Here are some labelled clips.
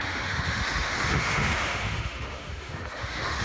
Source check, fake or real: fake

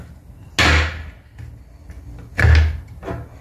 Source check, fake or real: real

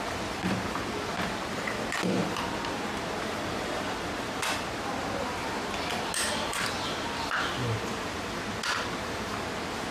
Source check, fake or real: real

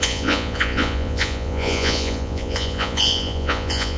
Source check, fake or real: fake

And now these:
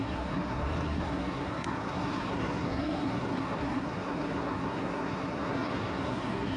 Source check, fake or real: fake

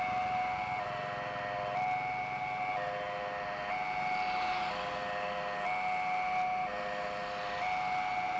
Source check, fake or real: real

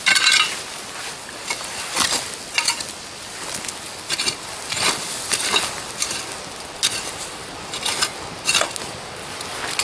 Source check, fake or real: real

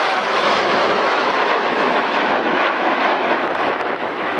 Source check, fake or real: fake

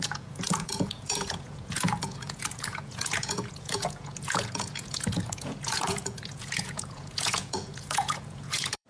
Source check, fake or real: fake